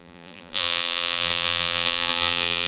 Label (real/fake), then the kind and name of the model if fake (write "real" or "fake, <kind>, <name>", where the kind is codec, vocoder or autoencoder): fake, vocoder, BigVGAN v2